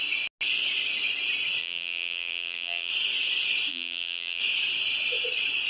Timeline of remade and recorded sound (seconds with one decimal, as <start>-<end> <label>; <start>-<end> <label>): 0.0-1.6 recorded; 1.6-2.9 remade; 2.9-3.7 recorded; 3.7-4.4 remade; 4.4-5.7 recorded